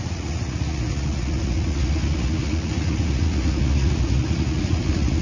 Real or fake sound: fake